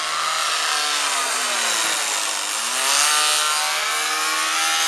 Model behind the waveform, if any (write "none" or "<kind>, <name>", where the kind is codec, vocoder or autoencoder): none